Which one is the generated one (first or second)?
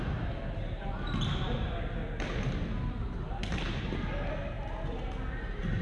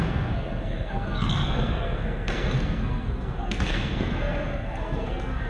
second